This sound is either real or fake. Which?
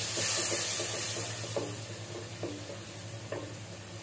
real